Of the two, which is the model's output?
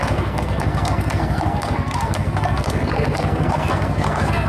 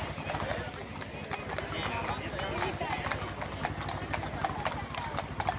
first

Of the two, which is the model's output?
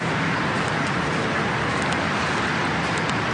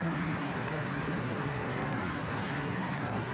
second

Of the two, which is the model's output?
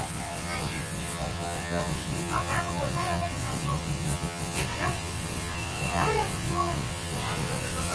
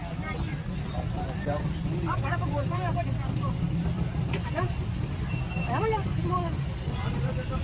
first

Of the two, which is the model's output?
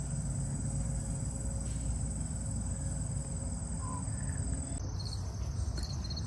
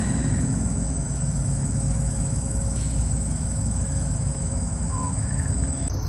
second